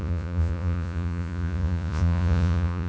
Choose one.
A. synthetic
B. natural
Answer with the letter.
A